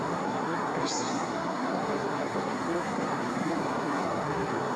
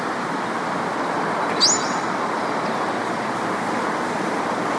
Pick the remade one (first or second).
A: first